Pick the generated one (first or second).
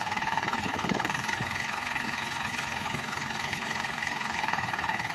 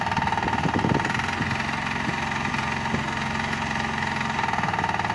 first